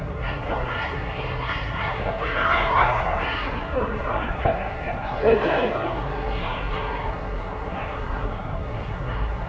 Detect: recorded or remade remade